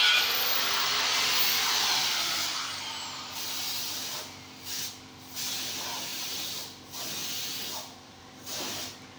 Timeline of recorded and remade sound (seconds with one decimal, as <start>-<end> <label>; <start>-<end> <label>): 0.0-2.0 recorded; 2.0-3.9 remade; 3.9-6.1 recorded; 6.1-6.8 remade; 6.8-7.2 recorded; 7.2-8.2 remade; 8.2-9.2 recorded